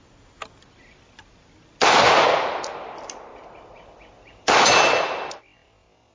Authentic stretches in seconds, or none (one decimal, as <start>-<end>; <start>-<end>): 0.0-6.1